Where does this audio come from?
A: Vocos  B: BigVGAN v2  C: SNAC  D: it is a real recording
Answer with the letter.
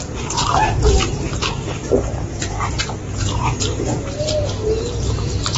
D